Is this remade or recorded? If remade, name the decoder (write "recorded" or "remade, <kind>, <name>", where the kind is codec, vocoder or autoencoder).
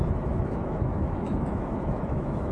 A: remade, autoencoder, DAC-VAE